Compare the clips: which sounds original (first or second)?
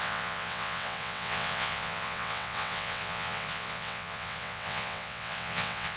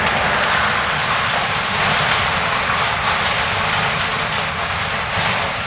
second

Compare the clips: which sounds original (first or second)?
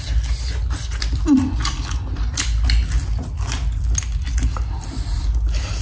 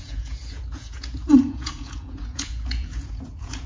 first